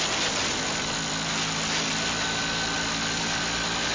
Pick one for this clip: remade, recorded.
recorded